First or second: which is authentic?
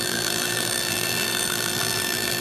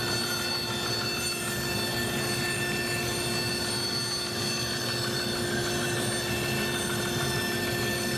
second